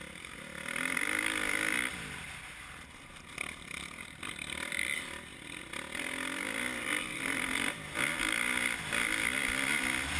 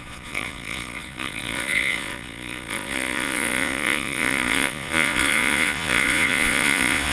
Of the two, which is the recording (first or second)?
first